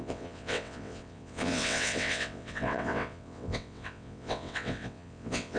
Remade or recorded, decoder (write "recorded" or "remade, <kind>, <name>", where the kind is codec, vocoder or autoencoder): remade, vocoder, WaveNeXt